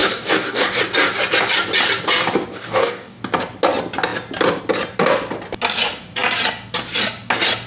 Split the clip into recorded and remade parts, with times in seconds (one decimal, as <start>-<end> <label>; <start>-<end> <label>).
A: 0.0-0.8 remade; 0.8-2.5 recorded; 2.5-3.2 remade; 3.2-7.7 recorded

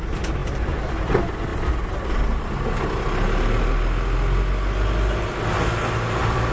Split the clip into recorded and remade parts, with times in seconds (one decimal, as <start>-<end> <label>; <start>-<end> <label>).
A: 0.0-6.5 recorded

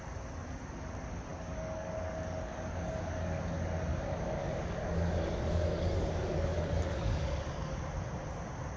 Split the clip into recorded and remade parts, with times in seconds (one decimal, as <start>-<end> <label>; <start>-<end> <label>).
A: 0.0-1.3 recorded; 1.3-3.4 remade; 3.4-3.9 recorded; 3.9-7.8 remade; 7.8-8.8 recorded

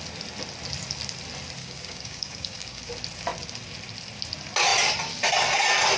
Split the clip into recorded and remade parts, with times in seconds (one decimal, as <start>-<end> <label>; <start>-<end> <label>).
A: 0.0-1.6 recorded; 1.6-2.9 remade; 2.9-6.0 recorded

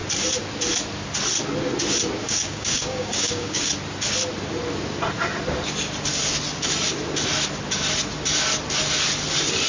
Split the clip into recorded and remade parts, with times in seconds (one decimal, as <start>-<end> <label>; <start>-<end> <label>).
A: 0.0-2.2 recorded; 2.2-3.7 remade; 3.7-9.7 recorded

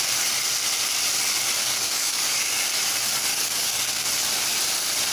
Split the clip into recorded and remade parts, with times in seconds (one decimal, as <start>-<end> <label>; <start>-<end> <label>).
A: 0.0-1.6 recorded; 1.6-2.5 remade; 2.5-3.3 recorded; 3.3-4.1 remade; 4.1-5.1 recorded